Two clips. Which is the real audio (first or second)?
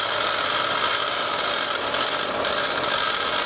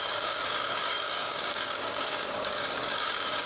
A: first